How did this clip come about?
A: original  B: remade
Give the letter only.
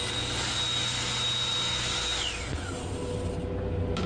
A